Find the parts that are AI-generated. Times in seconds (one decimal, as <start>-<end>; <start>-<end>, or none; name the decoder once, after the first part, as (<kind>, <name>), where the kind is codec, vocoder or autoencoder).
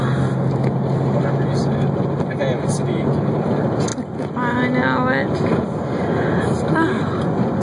none